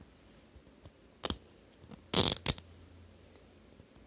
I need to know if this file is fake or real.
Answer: real